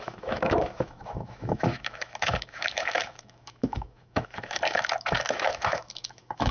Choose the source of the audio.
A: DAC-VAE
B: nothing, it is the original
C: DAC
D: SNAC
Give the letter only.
A